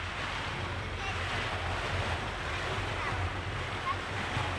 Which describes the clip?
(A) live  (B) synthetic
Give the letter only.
B